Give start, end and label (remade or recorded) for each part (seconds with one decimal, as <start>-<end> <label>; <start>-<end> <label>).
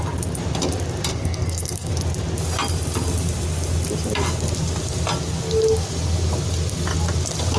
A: 0.0-1.1 recorded; 1.1-1.9 remade; 1.9-7.6 recorded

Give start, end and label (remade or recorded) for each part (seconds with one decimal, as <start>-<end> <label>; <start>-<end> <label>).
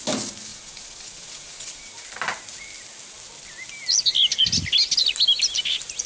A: 0.0-0.5 recorded; 0.5-1.9 remade; 1.9-6.1 recorded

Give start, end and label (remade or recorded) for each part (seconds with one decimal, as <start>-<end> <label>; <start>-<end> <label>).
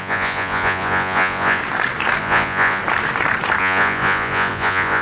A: 0.0-1.6 remade; 1.6-2.2 recorded; 2.2-2.8 remade; 2.8-3.6 recorded; 3.6-5.0 remade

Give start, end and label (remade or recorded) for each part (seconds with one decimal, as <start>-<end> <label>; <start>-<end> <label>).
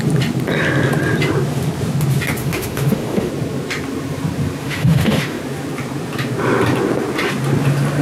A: 0.0-2.4 recorded; 2.4-3.3 remade; 3.3-4.6 recorded; 4.6-5.4 remade; 5.4-8.0 recorded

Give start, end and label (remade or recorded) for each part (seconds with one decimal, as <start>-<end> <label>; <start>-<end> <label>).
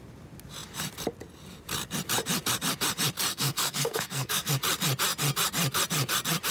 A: 0.0-3.3 recorded; 3.3-4.5 remade; 4.5-6.5 recorded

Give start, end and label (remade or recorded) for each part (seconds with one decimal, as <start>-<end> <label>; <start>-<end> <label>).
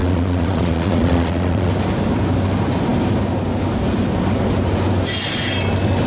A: 0.0-1.7 remade; 1.7-6.1 recorded